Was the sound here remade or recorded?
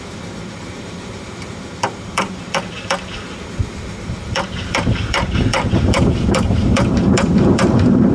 remade